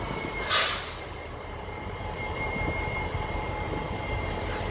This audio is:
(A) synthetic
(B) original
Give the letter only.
A